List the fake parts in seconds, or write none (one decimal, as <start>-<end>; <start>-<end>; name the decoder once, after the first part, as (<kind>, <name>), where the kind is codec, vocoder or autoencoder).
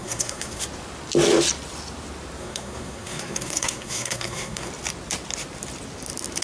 0.0-0.6 (codec, SNAC); 2.4-4.7